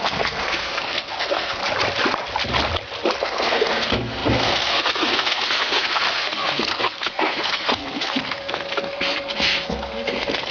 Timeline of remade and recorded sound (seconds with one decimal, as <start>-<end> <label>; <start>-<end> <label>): 0.0-1.6 remade; 1.6-3.2 recorded; 3.2-10.5 remade